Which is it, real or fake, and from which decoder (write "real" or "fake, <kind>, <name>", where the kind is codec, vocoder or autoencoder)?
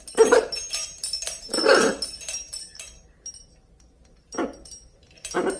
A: real